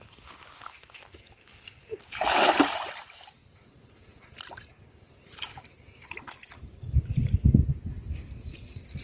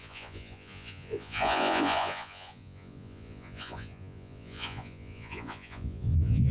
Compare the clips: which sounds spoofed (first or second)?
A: second